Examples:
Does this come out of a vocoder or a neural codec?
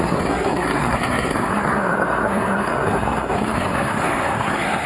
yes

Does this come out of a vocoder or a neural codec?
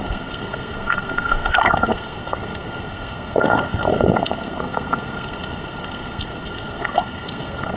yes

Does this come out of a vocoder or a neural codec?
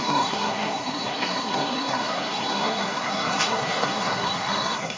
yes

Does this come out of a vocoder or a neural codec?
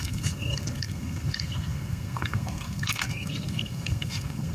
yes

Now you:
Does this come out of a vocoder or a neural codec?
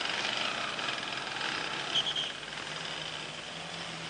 no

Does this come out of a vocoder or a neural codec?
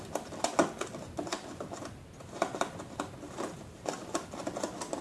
no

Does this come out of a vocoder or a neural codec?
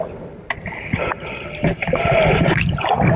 no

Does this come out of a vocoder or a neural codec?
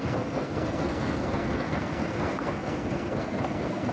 yes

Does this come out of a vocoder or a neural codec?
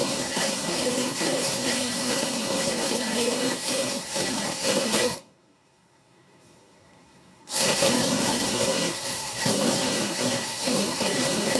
yes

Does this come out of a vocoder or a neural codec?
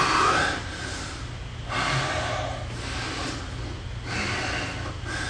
no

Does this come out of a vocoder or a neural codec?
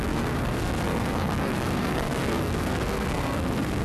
yes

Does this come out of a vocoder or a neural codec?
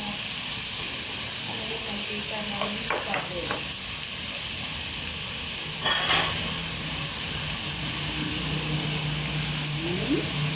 no